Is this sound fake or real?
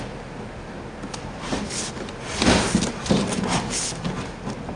real